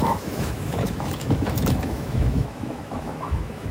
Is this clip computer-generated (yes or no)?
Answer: yes